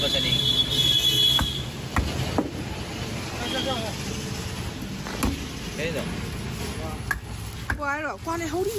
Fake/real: real